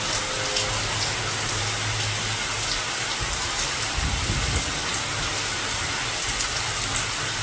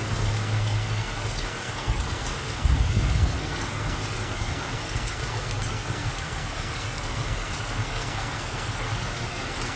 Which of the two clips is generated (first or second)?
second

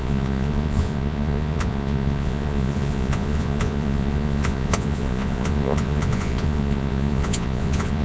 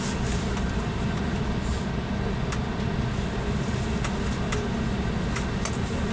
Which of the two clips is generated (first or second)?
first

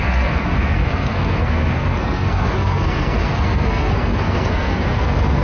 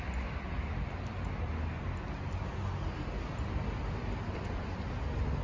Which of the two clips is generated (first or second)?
first